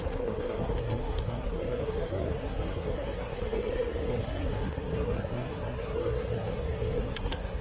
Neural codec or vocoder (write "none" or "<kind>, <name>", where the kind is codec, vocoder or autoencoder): codec, SNAC